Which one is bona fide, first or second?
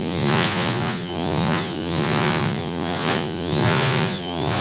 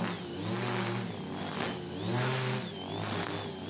second